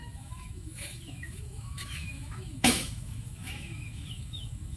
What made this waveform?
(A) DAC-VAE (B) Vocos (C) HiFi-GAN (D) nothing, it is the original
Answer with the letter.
A